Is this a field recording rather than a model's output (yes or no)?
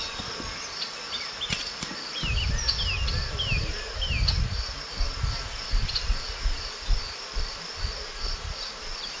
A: yes